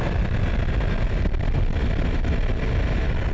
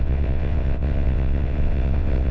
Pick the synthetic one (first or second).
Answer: second